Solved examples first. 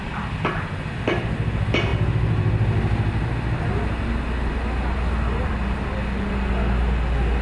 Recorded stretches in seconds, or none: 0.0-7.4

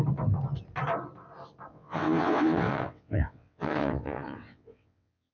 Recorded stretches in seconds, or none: 0.0-1.7